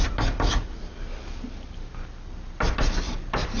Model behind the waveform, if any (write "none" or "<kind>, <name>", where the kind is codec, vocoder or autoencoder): none